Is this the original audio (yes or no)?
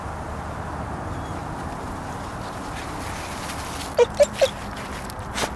yes